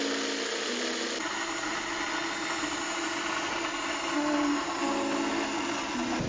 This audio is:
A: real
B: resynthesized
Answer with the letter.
A